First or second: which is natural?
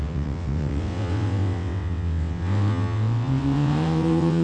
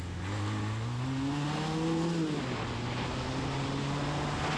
second